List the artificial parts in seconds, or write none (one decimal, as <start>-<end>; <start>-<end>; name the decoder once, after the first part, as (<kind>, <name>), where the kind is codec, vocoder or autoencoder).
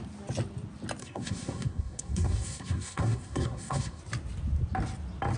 1.0-4.0 (codec, SNAC)